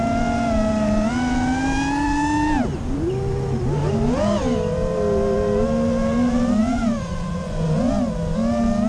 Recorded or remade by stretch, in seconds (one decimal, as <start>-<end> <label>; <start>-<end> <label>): 0.0-6.6 recorded; 6.6-7.9 remade; 7.9-8.9 recorded